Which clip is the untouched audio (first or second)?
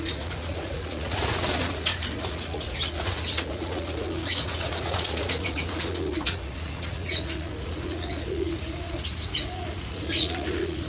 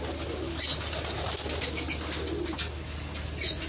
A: second